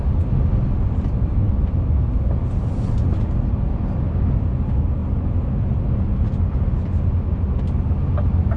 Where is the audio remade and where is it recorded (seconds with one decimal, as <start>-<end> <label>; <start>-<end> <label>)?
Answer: 0.0-8.6 recorded